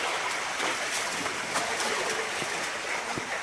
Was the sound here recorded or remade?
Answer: recorded